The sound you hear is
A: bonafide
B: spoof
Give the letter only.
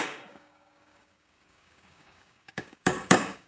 B